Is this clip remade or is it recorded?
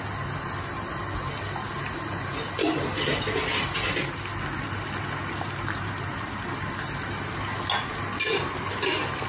recorded